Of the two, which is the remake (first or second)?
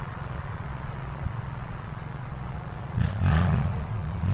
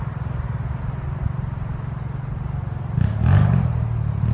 first